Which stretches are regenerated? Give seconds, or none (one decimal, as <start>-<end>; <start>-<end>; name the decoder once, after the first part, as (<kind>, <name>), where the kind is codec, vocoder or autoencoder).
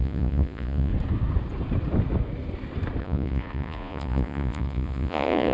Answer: 0.0-0.9 (vocoder, Vocos); 3.0-5.5